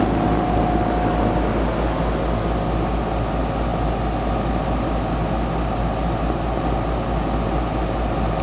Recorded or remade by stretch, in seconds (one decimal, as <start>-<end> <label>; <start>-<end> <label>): 0.0-8.4 recorded